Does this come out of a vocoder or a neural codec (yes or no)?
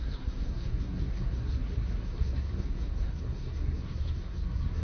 yes